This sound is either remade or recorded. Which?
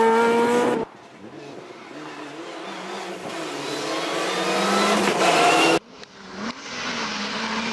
recorded